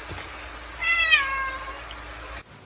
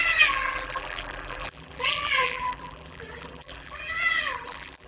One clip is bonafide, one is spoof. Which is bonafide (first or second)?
first